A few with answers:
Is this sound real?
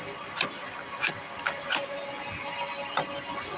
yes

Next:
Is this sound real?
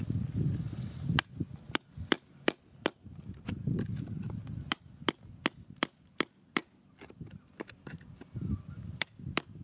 yes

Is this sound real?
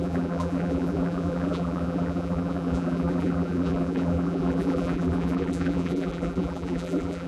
no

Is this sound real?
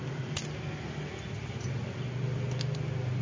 yes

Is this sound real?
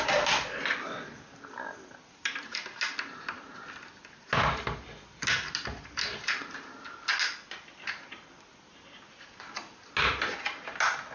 yes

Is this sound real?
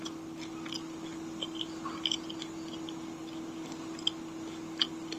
yes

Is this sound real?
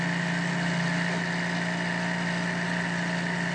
yes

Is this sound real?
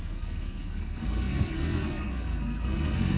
no